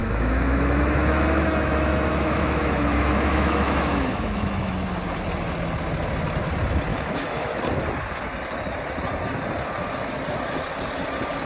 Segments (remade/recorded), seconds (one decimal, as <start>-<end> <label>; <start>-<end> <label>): 0.0-4.7 remade; 4.7-6.9 recorded; 6.9-7.6 remade; 7.6-11.5 recorded